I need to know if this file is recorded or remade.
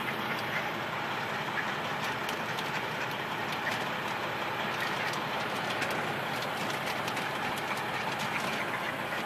recorded